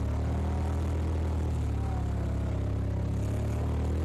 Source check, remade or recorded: recorded